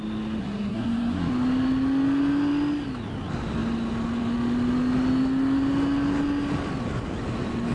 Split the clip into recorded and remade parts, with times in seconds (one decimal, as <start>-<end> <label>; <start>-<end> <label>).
0.0-0.4 recorded; 0.4-1.3 remade; 1.3-7.7 recorded